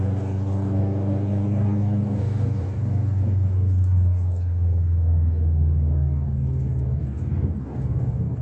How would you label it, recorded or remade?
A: remade